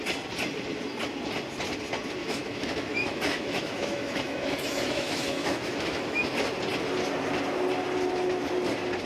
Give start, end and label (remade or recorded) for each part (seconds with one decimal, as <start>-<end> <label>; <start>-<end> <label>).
0.0-2.2 recorded; 2.2-6.3 remade; 6.3-9.1 recorded